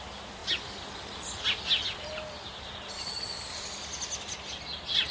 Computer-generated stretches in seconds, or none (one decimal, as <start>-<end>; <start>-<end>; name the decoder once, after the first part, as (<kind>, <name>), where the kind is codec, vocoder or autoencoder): none